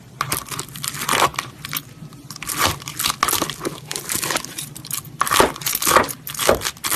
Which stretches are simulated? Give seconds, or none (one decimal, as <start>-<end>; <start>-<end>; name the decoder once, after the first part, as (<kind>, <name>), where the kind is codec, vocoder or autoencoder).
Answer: none